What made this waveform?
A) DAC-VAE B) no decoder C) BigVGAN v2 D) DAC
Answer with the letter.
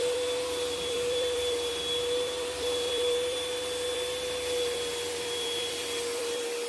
C